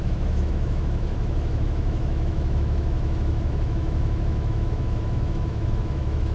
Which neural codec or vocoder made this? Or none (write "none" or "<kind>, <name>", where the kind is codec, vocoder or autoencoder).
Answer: autoencoder, DAC-VAE